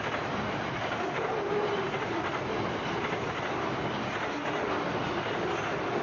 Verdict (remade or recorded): recorded